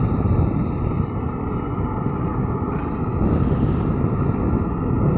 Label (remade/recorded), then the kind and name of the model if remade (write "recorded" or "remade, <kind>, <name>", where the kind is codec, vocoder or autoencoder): recorded